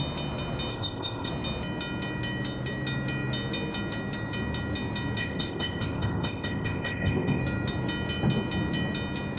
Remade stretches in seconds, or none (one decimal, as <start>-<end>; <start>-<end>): 0.7-1.3; 5.2-7.4